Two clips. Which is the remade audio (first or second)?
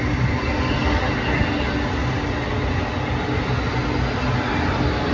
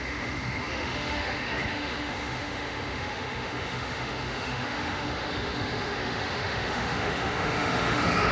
second